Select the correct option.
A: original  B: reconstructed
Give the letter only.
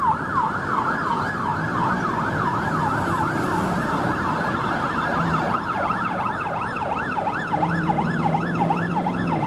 B